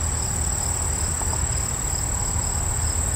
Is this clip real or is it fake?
real